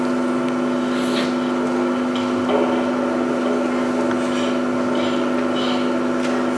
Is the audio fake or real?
real